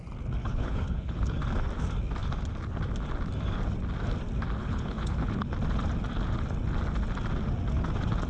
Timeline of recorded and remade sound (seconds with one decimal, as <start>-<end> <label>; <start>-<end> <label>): 0.0-0.4 recorded; 0.4-1.4 remade; 1.4-4.6 recorded; 4.6-5.5 remade; 5.5-8.3 recorded